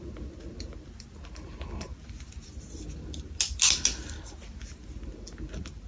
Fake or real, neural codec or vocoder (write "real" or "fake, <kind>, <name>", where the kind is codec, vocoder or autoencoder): real